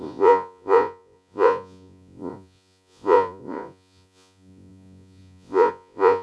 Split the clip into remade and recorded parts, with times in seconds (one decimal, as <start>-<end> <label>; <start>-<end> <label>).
0.0-6.2 remade